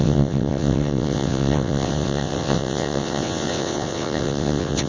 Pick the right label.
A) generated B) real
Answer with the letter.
A